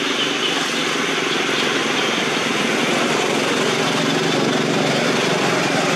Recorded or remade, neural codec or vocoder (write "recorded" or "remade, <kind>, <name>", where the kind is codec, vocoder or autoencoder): recorded